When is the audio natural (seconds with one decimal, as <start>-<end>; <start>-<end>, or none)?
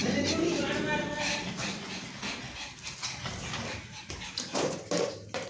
1.8-4.0